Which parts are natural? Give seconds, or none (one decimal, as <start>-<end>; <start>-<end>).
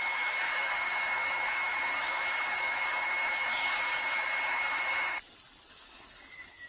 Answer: 3.9-4.5; 5.1-5.7